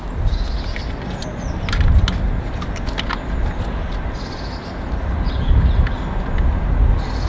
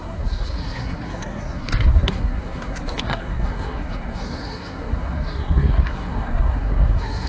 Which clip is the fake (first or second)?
second